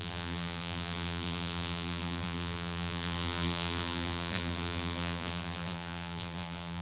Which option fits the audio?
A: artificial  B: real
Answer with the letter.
A